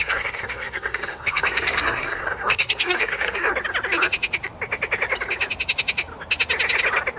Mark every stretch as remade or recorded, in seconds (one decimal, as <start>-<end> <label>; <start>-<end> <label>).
0.0-3.5 remade; 3.5-7.2 recorded